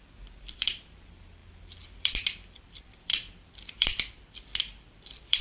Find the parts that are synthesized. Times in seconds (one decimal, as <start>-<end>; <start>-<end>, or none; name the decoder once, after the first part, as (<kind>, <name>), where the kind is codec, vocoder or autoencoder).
0.0-5.4 (vocoder, BigVGAN v2)